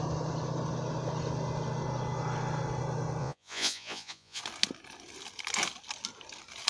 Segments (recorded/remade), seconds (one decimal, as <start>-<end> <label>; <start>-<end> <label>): 0.0-3.2 recorded; 3.2-4.4 remade; 4.4-6.7 recorded